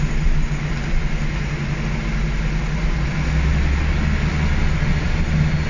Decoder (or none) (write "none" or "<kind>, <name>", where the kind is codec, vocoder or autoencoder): none